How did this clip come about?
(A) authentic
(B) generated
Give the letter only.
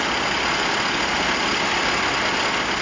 A